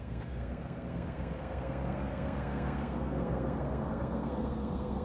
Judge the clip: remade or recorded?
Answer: remade